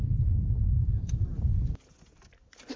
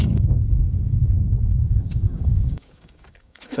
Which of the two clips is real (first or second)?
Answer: first